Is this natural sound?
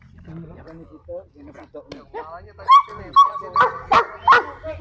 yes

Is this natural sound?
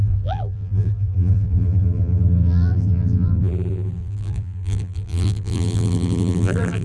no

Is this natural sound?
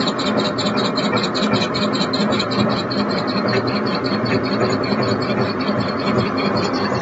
no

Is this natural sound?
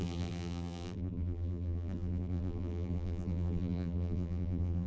no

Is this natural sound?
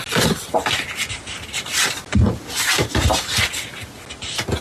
yes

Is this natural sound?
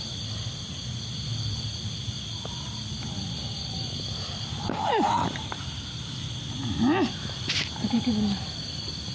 yes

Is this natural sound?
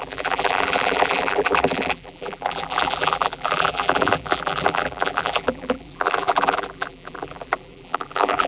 no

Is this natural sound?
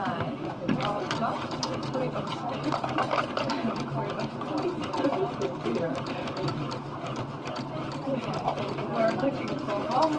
no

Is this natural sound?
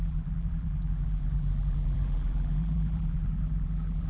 no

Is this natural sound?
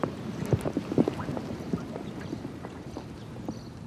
no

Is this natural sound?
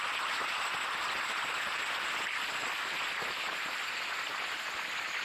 yes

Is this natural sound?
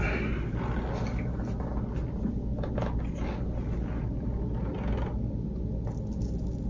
yes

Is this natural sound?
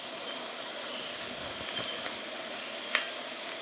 yes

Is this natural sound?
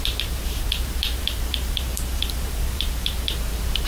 no